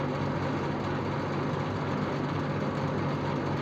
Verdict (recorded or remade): recorded